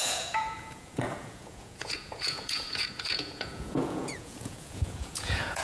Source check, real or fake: fake